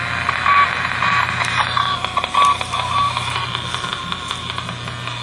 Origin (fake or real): real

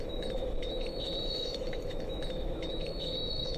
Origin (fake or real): fake